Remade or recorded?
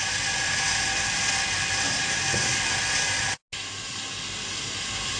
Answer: recorded